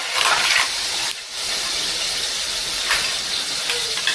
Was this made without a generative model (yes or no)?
yes